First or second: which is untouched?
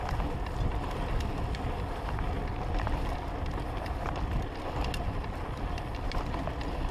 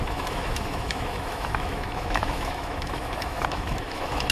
first